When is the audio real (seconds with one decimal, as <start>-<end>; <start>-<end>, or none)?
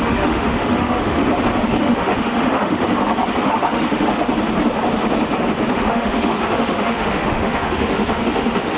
1.2-1.8; 2.8-3.4; 4.3-5.9